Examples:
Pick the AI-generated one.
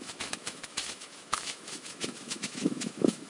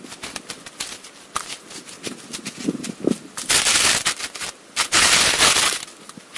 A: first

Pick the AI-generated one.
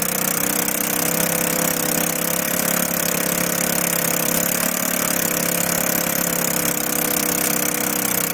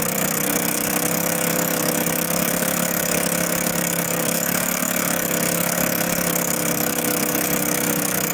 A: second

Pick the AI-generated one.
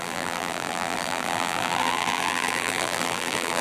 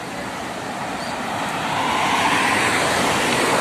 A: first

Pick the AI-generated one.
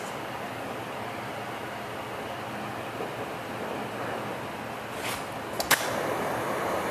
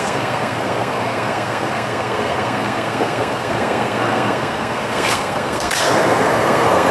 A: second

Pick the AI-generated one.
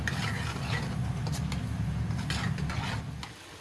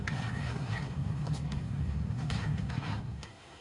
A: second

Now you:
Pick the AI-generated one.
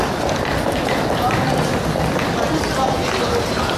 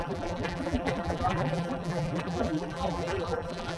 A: second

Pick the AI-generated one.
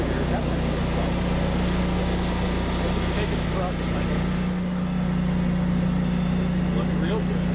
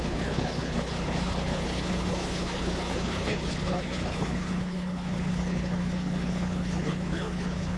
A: second